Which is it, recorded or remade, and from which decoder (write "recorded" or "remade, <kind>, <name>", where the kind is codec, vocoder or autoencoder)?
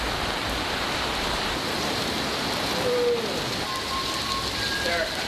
recorded